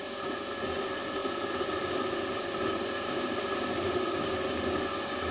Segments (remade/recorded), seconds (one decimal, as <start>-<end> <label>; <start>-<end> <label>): 0.0-1.2 recorded; 1.2-4.4 remade; 4.4-5.3 recorded